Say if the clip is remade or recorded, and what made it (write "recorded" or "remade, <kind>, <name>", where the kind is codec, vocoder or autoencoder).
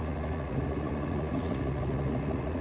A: remade, vocoder, Vocos